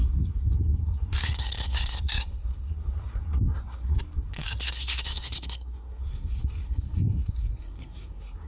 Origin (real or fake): fake